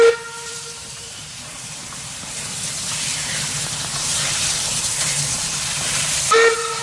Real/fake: fake